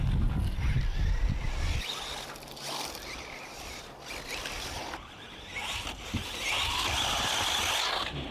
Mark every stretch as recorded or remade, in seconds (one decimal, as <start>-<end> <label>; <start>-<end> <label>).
0.0-8.3 recorded